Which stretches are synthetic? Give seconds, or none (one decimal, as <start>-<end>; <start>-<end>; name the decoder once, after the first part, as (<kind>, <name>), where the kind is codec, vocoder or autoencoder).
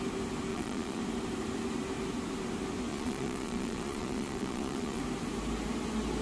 0.5-1.0 (vocoder, Vocos); 2.9-5.0